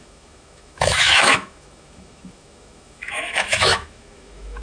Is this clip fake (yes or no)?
yes